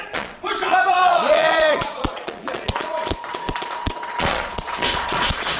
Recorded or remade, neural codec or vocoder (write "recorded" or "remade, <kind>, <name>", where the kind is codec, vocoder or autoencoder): remade, vocoder, Vocos